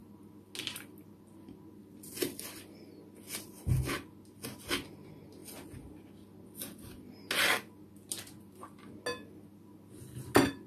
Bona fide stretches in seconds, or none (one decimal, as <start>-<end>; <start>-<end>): 0.0-10.7